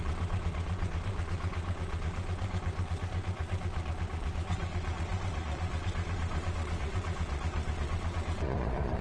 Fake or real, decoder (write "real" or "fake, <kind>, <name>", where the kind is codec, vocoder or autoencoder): fake, vocoder, Vocos